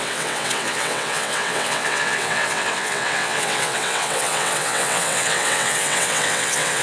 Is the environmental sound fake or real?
fake